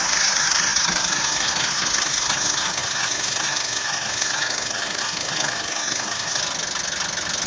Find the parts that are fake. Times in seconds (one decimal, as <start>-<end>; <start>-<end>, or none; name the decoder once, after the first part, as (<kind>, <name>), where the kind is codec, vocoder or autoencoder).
0.0-6.4 (codec, SNAC)